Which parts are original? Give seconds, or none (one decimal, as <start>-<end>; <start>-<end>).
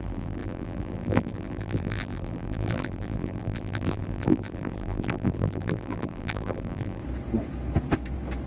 7.0-8.5